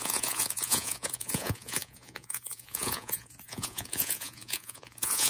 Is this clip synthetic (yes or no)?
yes